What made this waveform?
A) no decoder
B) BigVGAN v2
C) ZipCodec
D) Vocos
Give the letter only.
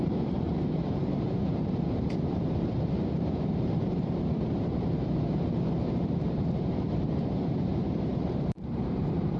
B